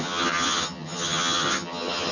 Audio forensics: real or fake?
fake